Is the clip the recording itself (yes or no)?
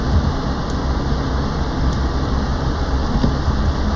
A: no